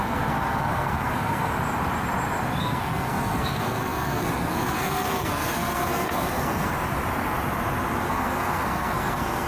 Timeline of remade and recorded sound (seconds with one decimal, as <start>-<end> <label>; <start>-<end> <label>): 0.0-1.5 remade; 1.5-2.6 recorded; 2.6-6.7 remade; 6.7-8.0 recorded; 8.0-9.5 remade